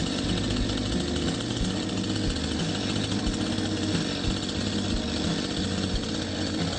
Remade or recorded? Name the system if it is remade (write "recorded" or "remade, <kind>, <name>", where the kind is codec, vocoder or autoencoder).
recorded